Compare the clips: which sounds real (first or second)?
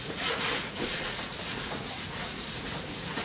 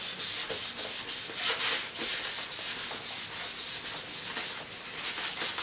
second